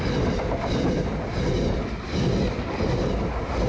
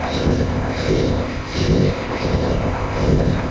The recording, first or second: first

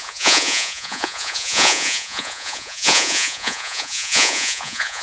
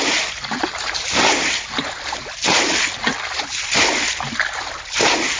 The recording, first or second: second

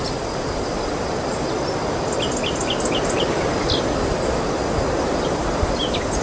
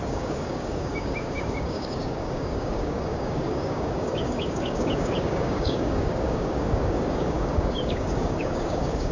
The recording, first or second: first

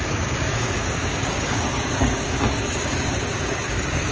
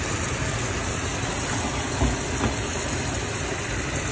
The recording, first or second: second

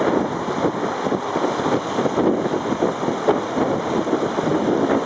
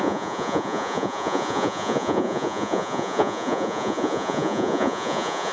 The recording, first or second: first